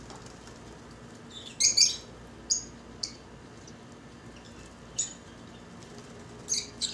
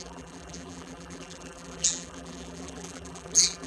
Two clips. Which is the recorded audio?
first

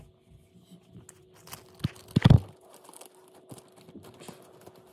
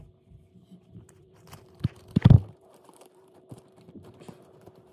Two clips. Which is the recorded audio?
first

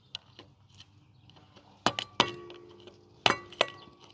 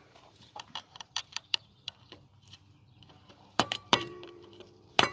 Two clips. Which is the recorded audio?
first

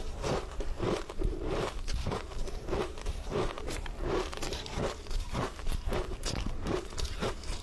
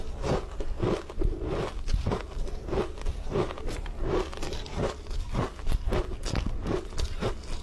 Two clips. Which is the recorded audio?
second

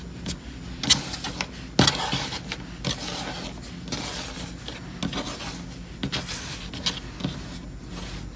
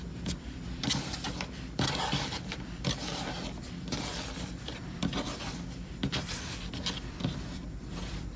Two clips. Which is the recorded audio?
first